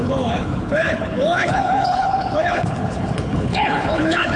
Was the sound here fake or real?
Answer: fake